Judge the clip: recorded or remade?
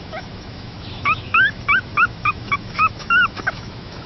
remade